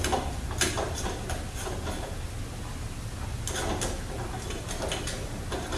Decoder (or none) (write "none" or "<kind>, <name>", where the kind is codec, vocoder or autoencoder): none